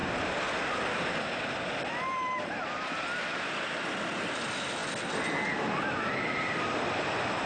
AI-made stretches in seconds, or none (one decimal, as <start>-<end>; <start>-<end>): none